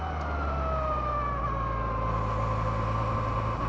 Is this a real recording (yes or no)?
yes